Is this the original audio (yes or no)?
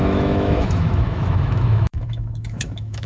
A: no